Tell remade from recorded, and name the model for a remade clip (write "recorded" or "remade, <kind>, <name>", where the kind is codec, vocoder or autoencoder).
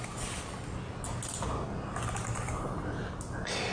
recorded